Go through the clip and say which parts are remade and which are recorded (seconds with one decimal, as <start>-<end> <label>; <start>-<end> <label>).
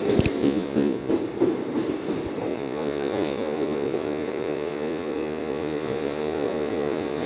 0.0-0.4 recorded; 0.4-1.1 remade; 1.1-2.5 recorded; 2.5-7.3 remade